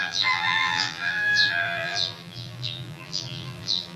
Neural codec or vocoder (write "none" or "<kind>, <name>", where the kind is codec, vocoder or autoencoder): vocoder, BigVGAN v2